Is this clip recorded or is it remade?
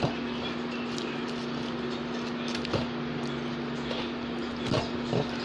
recorded